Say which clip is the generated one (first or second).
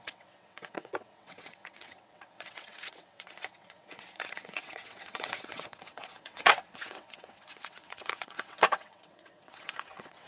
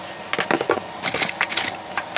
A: first